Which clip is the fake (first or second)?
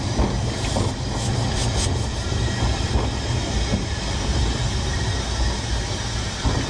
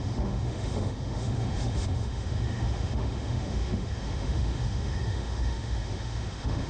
second